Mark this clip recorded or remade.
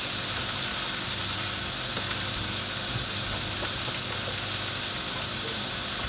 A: recorded